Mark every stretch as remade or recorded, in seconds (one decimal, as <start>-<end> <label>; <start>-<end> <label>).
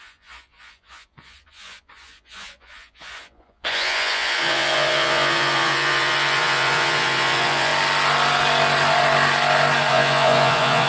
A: 0.0-7.7 remade; 7.7-9.9 recorded; 9.9-10.9 remade